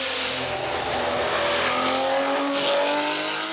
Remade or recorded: recorded